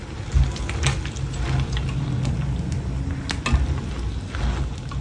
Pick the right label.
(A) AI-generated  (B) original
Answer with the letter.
B